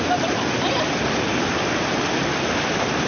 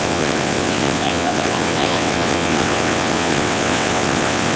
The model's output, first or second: second